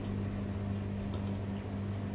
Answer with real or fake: real